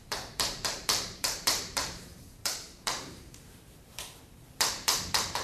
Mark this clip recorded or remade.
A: remade